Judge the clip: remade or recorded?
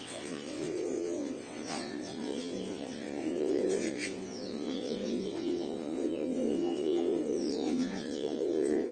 remade